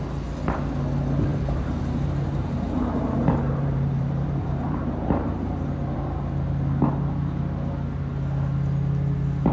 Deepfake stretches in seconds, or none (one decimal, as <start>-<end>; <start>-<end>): 1.3-6.2